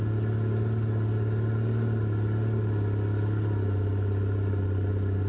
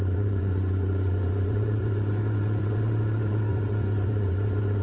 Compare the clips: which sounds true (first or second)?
first